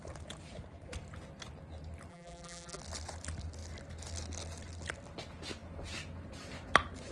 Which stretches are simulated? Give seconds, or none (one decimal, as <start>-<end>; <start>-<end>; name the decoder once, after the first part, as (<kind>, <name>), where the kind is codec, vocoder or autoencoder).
2.1-2.8 (vocoder, BigVGAN v2)